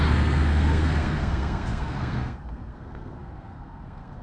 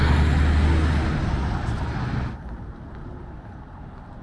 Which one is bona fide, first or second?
second